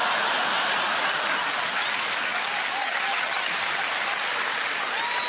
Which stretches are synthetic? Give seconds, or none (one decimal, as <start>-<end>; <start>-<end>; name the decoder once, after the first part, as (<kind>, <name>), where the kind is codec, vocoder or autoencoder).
2.8-3.5 (vocoder, HiFi-GAN)